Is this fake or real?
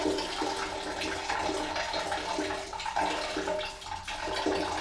real